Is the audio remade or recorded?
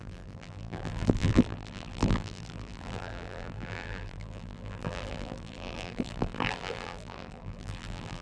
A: remade